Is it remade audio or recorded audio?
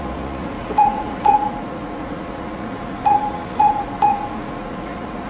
remade